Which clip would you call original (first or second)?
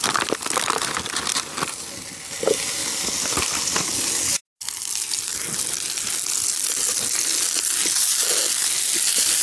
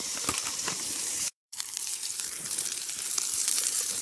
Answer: first